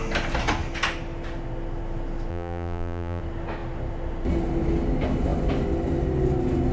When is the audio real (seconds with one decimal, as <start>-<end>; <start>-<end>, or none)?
0.0-2.3; 3.2-6.7